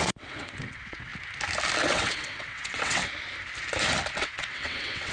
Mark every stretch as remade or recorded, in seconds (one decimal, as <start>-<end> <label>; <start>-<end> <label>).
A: 0.0-1.1 remade; 1.1-1.8 recorded; 1.8-3.0 remade; 3.0-4.2 recorded; 4.2-5.1 remade